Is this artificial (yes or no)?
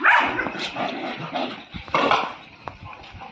no